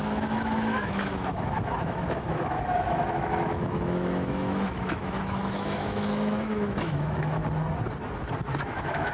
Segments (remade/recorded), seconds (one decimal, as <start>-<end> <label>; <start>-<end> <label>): 0.0-7.4 remade; 7.4-8.6 recorded; 8.6-9.1 remade

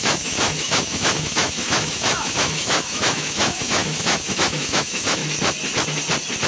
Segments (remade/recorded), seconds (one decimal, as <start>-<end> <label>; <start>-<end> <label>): 0.0-5.2 remade; 5.2-6.5 recorded